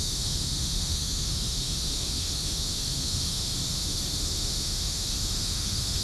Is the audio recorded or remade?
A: remade